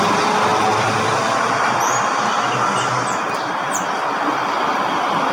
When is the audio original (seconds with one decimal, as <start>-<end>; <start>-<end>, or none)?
0.0-5.3